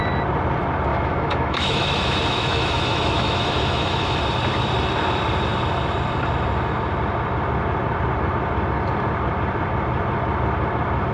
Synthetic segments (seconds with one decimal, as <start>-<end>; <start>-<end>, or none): 0.9-4.2

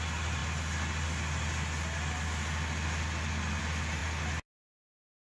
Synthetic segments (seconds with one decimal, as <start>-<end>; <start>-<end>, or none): none

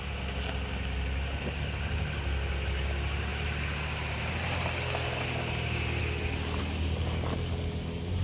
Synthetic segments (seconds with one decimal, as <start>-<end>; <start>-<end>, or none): none

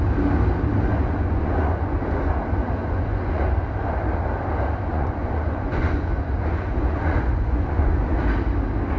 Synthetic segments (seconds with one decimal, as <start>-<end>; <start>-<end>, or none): 0.9-2.3; 2.8-3.6; 4.9-8.2

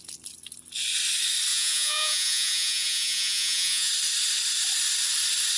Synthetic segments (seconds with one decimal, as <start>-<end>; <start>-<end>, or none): 1.5-3.9

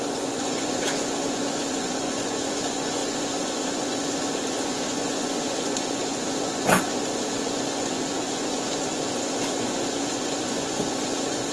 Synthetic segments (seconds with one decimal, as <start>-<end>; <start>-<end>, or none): 0.0-11.5